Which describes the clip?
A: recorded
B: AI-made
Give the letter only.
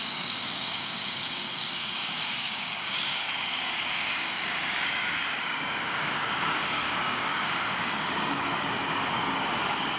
B